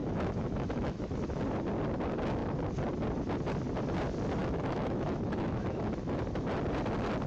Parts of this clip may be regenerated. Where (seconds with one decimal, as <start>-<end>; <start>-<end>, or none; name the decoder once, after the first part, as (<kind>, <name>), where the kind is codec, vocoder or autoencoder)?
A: 0.0-1.4 (autoencoder, DAC-VAE); 4.4-6.2